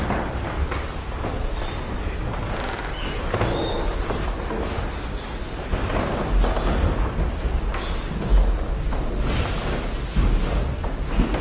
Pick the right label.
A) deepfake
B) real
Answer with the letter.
B